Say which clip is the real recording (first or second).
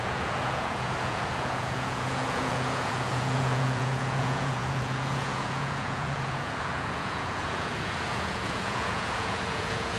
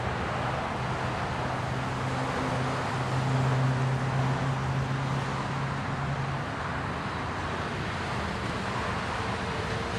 second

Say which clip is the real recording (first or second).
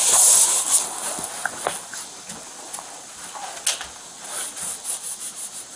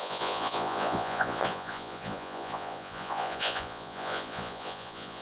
first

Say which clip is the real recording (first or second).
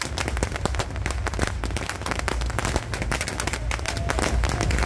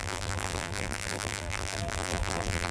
first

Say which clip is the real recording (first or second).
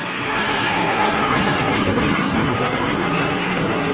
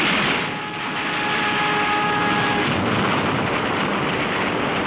second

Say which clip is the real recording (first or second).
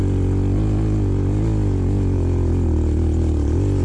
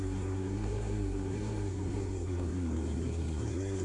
first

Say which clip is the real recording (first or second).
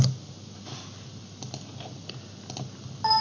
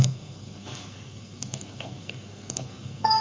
first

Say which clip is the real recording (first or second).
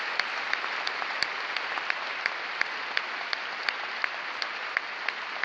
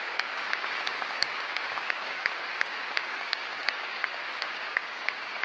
first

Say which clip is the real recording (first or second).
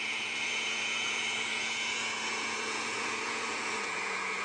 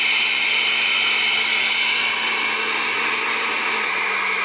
second